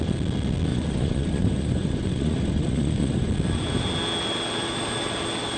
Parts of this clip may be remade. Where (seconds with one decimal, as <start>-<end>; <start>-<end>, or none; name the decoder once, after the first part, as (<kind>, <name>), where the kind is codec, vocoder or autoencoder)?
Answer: 0.7-3.3 (vocoder, Vocos)